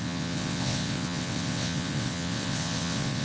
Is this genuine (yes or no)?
no